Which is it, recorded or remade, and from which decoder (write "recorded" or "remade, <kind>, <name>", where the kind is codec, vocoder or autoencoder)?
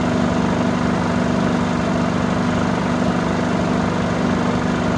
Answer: recorded